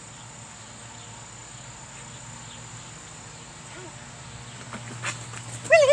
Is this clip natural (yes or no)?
yes